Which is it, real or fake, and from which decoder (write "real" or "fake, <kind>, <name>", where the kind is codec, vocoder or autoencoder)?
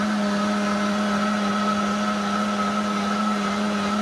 real